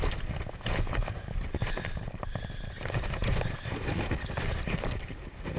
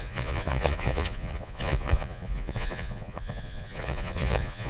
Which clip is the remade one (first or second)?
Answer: second